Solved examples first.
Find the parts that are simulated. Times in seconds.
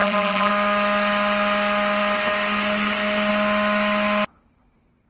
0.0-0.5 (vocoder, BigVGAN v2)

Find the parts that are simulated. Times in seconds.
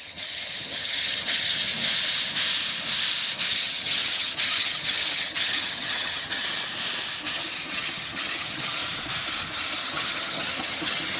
0.0-1.7 (vocoder, HiFi-GAN); 3.5-6.4; 7.3-8.8; 9.8-11.2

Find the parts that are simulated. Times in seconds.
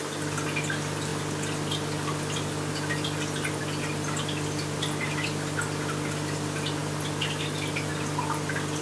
none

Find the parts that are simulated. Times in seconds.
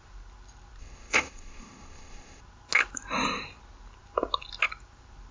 0.8-2.4 (codec, ZipCodec)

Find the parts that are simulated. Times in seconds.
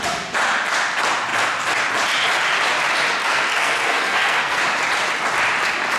3.2-4.6 (codec, SNAC)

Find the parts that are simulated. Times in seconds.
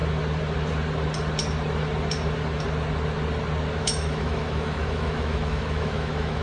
3.8-6.4 (autoencoder, DAC-VAE)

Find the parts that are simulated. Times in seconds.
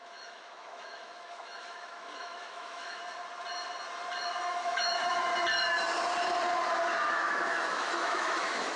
0.0-3.0 (autoencoder, DAC-VAE); 4.4-5.3; 7.1-8.8